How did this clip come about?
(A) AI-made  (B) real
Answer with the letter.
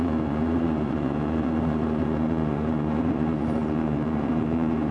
A